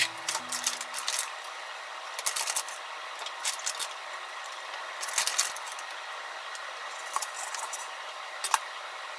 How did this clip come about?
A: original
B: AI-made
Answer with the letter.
A